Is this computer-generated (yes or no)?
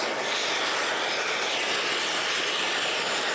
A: no